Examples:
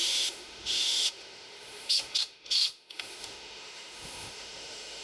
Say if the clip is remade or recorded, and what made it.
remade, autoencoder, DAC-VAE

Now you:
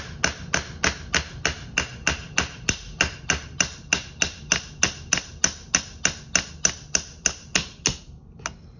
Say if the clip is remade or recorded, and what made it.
recorded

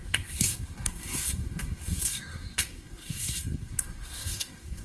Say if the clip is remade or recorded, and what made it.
remade, codec, SNAC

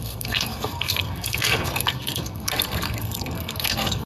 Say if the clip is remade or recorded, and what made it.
remade, codec, SNAC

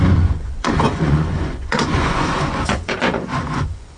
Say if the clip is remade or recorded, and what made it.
remade, vocoder, Vocos